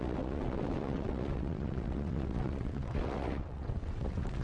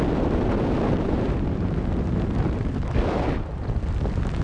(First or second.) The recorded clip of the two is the second